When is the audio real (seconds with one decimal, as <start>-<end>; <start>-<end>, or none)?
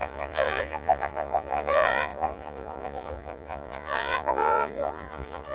none